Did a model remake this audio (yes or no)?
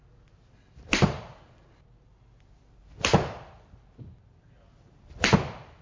no